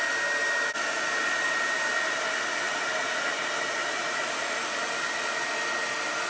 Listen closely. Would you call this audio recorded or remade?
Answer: recorded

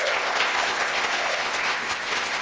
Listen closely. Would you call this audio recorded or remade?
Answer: remade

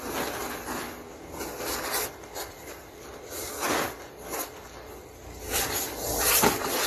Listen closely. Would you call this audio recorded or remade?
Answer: recorded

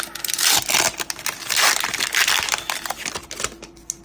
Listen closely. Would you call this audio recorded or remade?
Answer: recorded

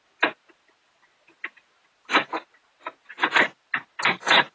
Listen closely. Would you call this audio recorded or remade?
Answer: recorded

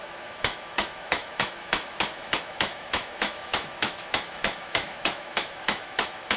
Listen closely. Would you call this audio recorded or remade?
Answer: remade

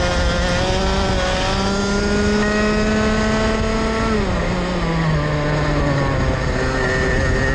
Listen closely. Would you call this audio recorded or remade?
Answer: recorded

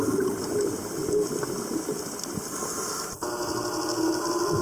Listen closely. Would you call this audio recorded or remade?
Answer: recorded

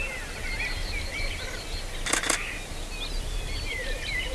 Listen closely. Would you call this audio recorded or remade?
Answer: recorded